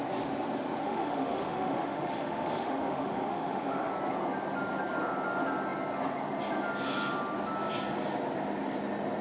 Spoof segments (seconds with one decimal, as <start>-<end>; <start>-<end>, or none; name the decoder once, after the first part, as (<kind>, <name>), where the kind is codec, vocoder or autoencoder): 0.8-3.9 (autoencoder, DAC-VAE)